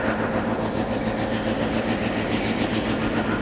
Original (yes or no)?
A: yes